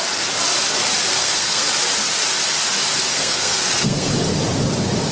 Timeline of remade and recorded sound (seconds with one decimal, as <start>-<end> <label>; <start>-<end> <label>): 0.0-1.1 recorded; 1.1-1.7 remade; 1.7-3.1 recorded; 3.1-4.1 remade; 4.1-5.1 recorded